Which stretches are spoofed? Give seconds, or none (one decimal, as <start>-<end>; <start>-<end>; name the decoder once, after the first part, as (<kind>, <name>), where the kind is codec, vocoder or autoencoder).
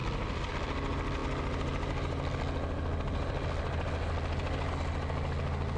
none